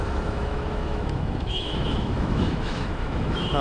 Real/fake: fake